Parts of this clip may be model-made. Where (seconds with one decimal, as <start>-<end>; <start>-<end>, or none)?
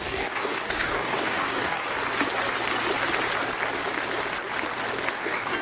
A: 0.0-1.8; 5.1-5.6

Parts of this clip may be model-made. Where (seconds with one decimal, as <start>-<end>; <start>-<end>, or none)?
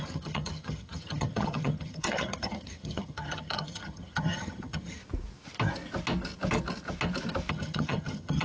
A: 0.0-5.0; 7.5-8.4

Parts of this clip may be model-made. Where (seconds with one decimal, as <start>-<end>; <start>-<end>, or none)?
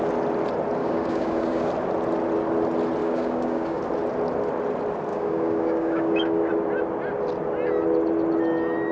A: 0.8-1.7; 3.0-3.8; 5.1-6.5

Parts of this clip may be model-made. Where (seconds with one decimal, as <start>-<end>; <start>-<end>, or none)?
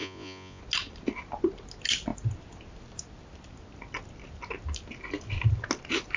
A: 0.0-0.6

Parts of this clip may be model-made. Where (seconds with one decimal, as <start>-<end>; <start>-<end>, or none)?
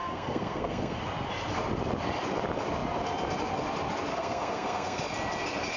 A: 0.0-1.0; 4.1-5.0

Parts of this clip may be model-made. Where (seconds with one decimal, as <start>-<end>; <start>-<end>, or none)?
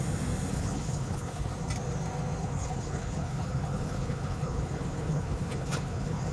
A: 0.5-1.5; 2.4-6.3